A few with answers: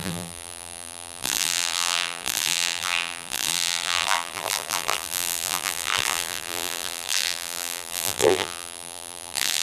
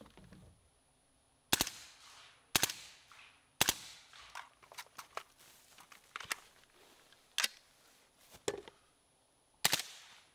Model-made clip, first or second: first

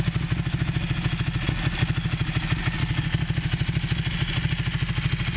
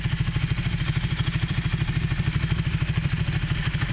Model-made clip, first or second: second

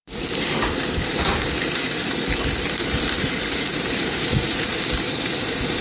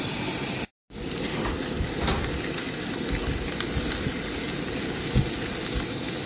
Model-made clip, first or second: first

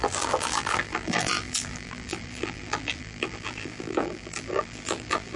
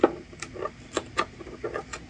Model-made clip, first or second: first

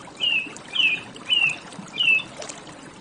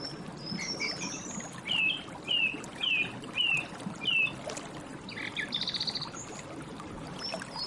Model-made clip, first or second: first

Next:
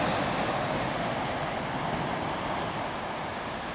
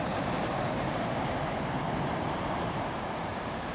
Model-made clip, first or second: second